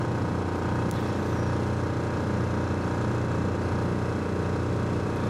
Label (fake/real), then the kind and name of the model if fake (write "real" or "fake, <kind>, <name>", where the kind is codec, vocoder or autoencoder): real